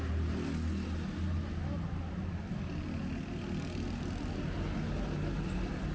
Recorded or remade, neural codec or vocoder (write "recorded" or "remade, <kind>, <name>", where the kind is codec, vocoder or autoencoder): recorded